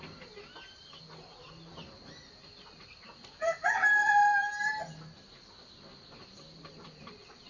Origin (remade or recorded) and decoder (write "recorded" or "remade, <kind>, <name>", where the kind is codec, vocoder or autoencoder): recorded